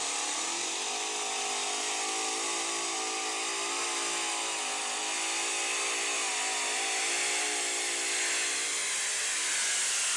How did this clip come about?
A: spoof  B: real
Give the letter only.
B